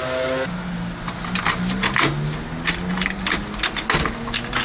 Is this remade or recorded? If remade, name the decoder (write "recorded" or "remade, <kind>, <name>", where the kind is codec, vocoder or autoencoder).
recorded